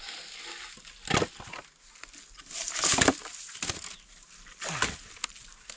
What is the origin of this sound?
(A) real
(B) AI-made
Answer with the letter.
A